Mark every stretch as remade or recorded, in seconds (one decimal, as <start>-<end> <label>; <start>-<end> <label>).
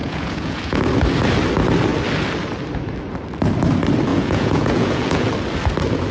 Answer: 0.0-0.8 remade; 0.8-4.1 recorded; 4.1-5.3 remade; 5.3-6.1 recorded